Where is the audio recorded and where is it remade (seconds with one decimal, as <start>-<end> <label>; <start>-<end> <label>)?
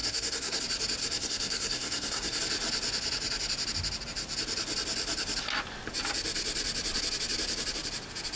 0.0-0.6 remade; 0.6-1.0 recorded; 1.0-2.4 remade; 2.4-8.4 recorded